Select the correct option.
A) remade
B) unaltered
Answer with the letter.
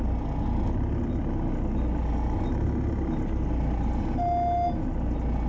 B